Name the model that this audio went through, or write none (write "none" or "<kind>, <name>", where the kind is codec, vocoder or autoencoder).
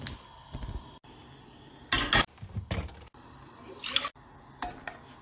none